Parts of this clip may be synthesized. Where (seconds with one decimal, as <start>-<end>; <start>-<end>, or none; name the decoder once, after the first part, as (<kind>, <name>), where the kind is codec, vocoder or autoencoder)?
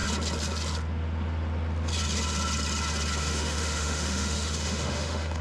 3.2-5.4 (autoencoder, DAC-VAE)